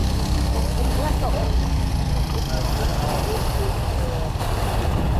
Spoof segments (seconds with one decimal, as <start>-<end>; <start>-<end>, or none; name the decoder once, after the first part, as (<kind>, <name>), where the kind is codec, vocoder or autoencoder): 0.0-1.9 (codec, DAC)